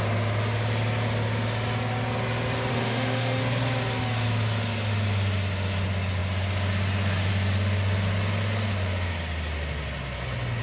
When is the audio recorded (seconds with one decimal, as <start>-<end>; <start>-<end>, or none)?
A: 0.0-2.7; 3.4-10.6